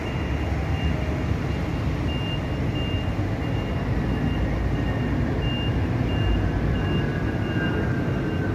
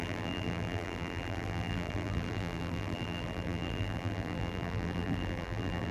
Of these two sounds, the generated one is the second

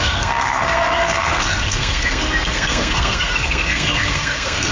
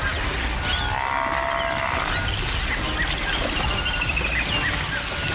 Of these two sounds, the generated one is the first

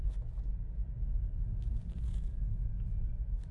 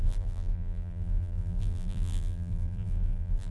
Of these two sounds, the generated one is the second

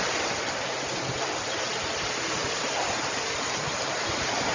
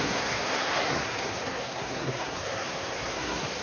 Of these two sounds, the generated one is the second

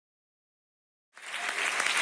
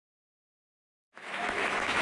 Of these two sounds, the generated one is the second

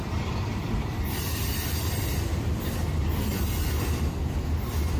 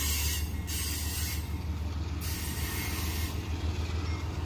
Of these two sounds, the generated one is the first